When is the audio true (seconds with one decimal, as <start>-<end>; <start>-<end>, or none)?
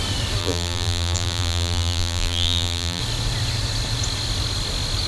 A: 0.0-0.4; 3.0-5.1